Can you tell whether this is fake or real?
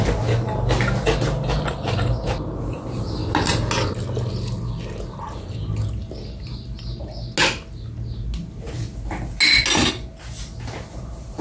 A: real